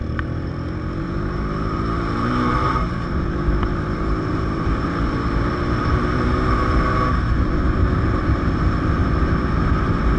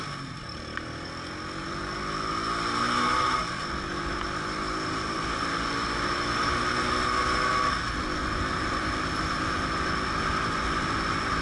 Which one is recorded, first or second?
second